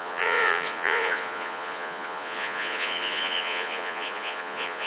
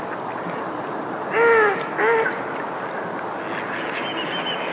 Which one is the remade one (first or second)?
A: first